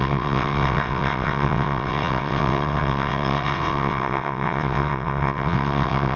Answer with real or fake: fake